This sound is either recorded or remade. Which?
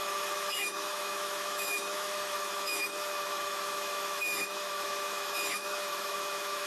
remade